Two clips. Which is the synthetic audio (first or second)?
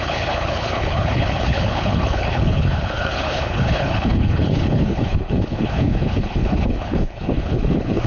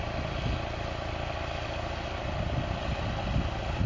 first